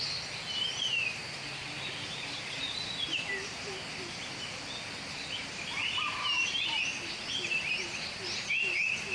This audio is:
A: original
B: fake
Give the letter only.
A